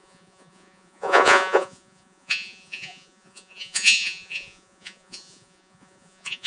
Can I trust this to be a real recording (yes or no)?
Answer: no